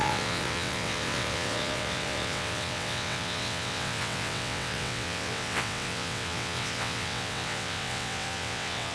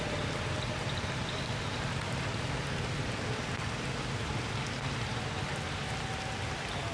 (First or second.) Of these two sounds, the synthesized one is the first